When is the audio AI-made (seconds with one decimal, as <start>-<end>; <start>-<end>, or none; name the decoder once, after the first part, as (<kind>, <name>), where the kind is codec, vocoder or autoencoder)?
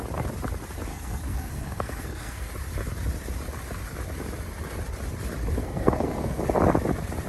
0.9-2.5 (codec, SNAC); 5.6-6.4